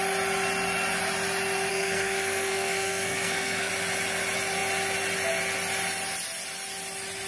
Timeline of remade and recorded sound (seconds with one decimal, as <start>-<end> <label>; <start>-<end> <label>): 0.0-1.7 recorded; 1.7-3.7 remade; 3.7-7.3 recorded